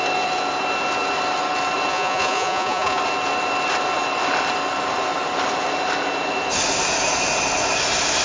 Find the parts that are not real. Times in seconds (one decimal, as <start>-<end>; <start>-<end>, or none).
1.9-3.0